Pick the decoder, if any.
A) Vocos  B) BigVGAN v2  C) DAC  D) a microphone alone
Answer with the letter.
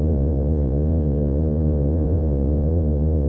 A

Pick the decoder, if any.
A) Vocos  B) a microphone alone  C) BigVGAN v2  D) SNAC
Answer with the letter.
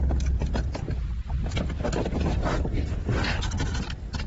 B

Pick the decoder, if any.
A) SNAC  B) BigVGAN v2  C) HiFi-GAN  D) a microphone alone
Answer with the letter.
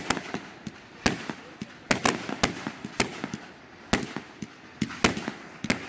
D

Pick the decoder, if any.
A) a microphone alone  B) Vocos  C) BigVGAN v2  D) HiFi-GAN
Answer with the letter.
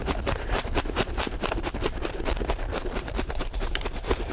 C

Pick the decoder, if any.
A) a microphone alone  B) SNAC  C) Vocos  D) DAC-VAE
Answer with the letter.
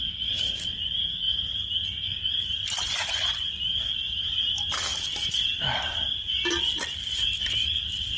A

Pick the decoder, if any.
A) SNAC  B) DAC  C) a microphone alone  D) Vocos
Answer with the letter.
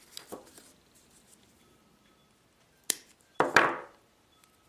C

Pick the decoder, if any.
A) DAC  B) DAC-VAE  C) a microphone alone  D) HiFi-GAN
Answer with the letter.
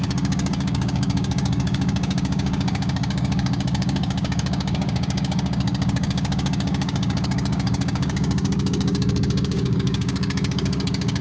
A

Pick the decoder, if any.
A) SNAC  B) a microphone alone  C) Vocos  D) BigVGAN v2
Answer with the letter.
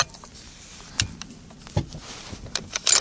B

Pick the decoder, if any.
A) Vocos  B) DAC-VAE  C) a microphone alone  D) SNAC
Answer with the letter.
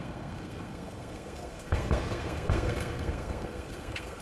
D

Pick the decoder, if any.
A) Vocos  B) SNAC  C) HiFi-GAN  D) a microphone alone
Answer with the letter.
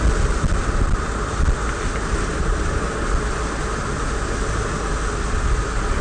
D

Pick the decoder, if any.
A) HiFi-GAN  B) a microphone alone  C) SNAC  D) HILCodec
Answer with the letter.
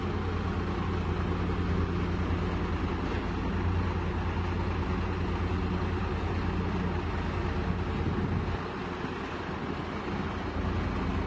B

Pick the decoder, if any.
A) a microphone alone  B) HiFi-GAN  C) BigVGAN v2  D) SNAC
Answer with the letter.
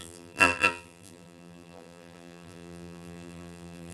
C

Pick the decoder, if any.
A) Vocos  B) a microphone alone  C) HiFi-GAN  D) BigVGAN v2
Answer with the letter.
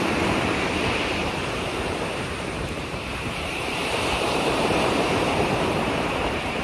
D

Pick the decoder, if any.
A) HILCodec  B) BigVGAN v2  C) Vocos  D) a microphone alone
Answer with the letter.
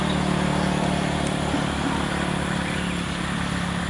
D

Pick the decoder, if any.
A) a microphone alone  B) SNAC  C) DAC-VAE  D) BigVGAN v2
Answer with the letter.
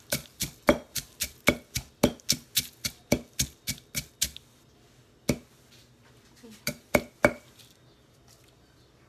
A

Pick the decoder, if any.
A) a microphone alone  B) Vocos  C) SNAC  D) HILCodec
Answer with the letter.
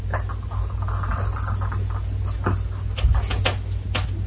A